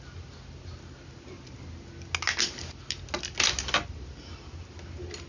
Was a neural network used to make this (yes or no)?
no